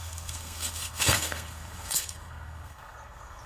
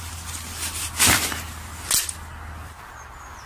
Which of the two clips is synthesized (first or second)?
first